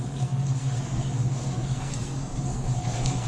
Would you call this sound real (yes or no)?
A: no